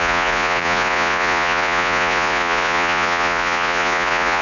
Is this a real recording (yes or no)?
no